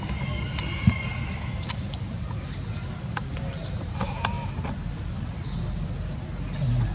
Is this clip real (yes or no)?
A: yes